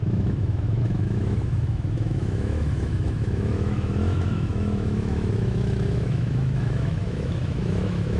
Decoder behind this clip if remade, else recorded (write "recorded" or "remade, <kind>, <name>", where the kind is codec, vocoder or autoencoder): remade, autoencoder, DAC-VAE